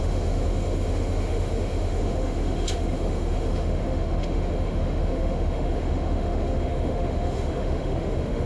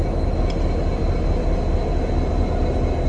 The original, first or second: second